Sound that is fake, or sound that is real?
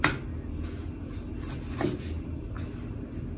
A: real